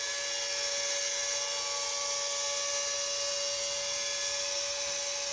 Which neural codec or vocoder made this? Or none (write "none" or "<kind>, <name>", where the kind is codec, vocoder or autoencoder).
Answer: none